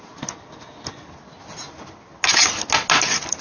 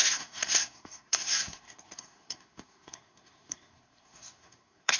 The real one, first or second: first